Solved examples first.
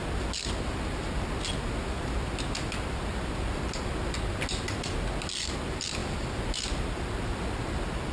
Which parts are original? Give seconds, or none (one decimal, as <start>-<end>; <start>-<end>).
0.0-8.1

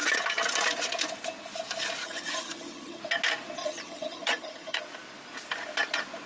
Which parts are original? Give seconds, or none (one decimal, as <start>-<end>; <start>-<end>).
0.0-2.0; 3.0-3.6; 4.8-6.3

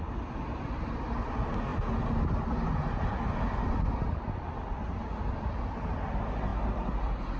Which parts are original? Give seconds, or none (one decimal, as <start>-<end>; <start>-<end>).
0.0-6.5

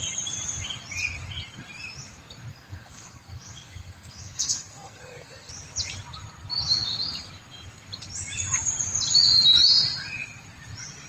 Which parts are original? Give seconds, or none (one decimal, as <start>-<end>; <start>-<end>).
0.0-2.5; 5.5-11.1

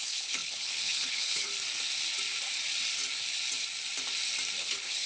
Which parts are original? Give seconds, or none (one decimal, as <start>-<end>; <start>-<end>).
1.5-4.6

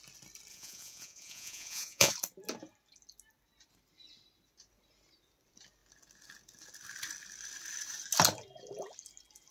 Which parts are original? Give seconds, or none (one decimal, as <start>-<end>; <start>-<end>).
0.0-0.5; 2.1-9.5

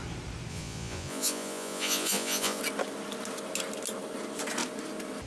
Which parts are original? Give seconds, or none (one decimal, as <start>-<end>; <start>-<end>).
0.0-0.5; 2.6-5.3